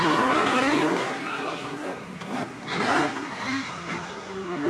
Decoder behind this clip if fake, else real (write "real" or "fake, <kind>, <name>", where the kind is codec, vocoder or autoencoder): fake, codec, SNAC